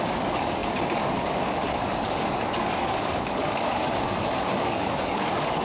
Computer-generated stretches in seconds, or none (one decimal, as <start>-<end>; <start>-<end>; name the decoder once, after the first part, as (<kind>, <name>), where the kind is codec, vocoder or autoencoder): 0.0-5.6 (codec, DAC)